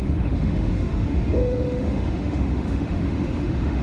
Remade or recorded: remade